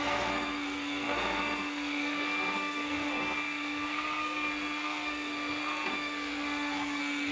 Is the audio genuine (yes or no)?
no